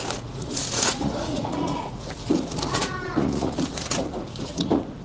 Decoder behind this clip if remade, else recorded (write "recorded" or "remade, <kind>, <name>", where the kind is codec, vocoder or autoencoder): remade, vocoder, Vocos